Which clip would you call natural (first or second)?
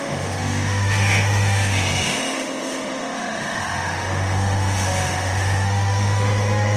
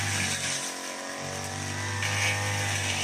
second